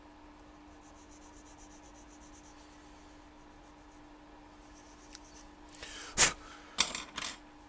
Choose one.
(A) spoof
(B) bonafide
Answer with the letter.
B